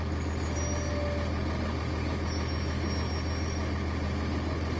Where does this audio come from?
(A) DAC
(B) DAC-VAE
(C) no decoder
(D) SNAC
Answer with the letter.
C